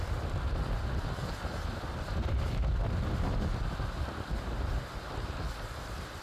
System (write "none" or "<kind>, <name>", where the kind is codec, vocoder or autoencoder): none